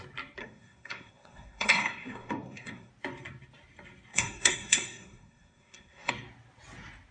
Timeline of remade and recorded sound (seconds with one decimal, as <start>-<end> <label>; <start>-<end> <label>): 0.0-0.4 recorded; 0.4-2.9 remade; 2.9-4.1 recorded; 4.1-6.1 remade; 6.1-7.1 recorded

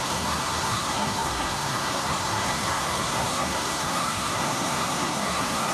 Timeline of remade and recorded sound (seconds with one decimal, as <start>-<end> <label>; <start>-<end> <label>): 0.0-5.7 remade